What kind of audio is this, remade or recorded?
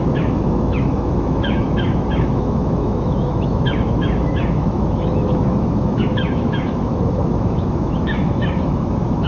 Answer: remade